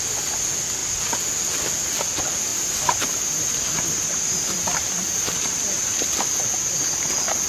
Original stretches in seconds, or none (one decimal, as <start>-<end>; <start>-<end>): 0.0-2.5; 6.1-7.5